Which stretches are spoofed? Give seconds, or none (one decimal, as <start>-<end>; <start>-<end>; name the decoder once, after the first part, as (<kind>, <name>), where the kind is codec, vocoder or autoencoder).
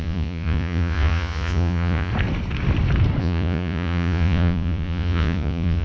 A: 0.0-2.1 (vocoder, Vocos); 3.2-5.8